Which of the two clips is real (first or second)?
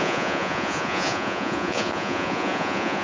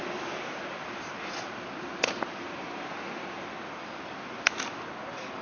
second